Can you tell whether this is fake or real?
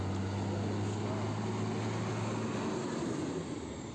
real